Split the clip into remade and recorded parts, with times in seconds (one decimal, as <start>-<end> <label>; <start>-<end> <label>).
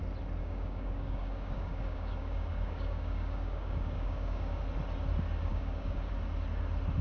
0.0-0.4 recorded; 0.4-4.6 remade; 4.6-5.5 recorded; 5.5-6.1 remade; 6.1-7.0 recorded